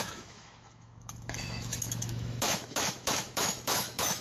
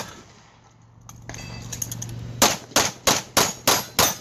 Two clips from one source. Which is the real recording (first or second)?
second